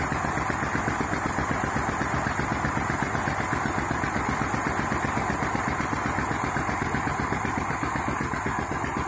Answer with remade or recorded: recorded